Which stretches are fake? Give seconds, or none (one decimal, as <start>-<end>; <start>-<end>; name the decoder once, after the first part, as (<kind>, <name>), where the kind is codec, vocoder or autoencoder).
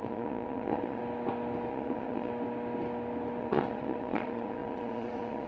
0.0-1.0 (vocoder, Vocos); 1.7-2.3; 3.4-5.5